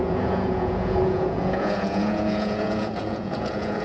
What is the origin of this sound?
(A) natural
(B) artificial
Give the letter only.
B